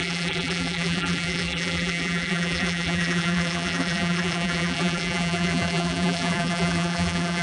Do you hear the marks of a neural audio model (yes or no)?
yes